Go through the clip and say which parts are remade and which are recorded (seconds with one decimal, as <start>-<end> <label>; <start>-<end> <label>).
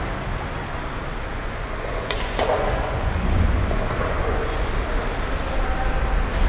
0.0-1.3 recorded; 1.3-4.7 remade; 4.7-6.5 recorded